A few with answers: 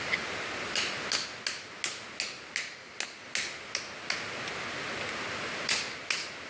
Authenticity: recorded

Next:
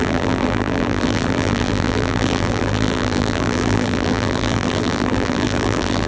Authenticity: remade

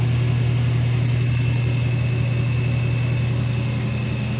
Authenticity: recorded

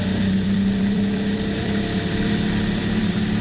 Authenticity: remade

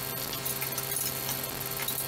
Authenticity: recorded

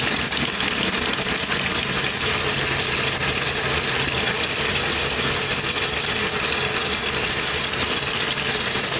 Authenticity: recorded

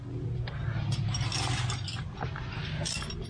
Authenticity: recorded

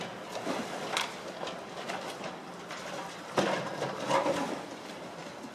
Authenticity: remade